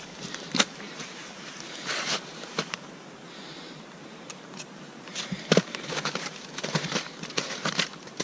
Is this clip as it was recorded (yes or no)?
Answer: no